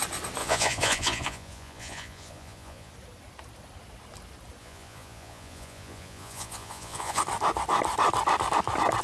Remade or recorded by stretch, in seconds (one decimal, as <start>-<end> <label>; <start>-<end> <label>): 0.0-0.4 recorded; 0.4-2.9 remade; 2.9-4.6 recorded; 4.6-7.2 remade; 7.2-9.0 recorded